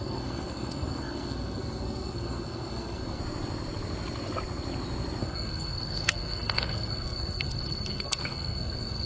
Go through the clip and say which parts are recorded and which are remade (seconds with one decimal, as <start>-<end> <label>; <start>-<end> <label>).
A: 0.0-3.2 remade; 3.2-5.2 recorded; 5.2-9.1 remade